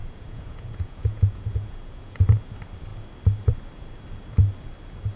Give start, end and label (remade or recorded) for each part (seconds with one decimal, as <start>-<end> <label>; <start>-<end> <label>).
0.0-2.2 remade; 2.2-5.2 recorded